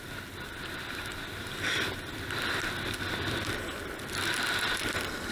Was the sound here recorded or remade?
recorded